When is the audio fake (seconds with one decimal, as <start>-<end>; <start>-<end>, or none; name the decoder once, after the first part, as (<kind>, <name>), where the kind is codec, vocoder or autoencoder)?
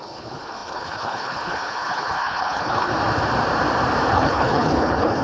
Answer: 0.0-2.9 (codec, HILCodec); 4.1-5.2